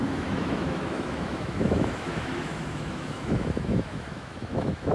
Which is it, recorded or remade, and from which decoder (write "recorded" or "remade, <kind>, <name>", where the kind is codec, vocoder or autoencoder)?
remade, autoencoder, DAC-VAE